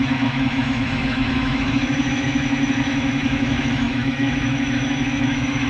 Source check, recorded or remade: remade